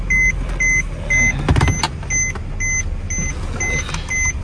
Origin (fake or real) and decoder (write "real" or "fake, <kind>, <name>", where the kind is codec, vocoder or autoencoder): real